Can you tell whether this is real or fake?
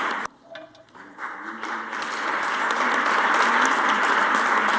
real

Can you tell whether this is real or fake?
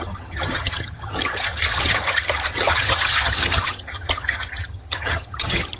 fake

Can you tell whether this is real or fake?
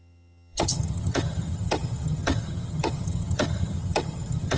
fake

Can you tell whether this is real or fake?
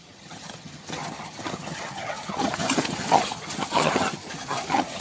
fake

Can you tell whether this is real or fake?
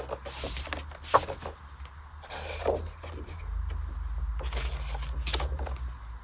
real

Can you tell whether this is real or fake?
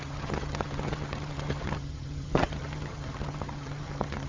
fake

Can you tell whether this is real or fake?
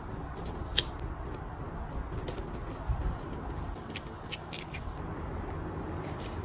real